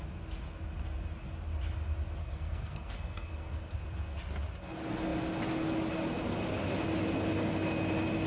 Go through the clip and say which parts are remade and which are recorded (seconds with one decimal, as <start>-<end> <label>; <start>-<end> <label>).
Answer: 0.0-2.2 recorded; 2.2-3.7 remade; 3.7-8.3 recorded